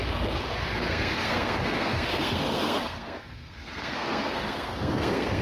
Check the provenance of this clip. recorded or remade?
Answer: remade